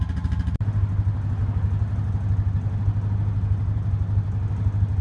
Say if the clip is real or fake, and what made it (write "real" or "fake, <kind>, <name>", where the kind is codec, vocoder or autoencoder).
real